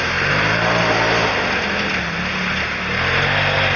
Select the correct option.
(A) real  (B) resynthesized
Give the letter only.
A